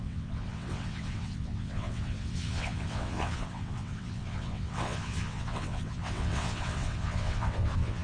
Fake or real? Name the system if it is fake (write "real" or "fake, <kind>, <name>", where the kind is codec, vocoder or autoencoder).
fake, vocoder, WaveNeXt